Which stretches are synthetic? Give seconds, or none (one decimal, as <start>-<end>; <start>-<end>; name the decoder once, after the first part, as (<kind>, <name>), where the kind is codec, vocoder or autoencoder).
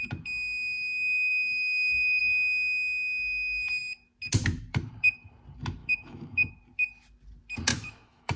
1.3-2.2 (autoencoder, DAC-VAE); 5.8-6.5; 7.7-8.4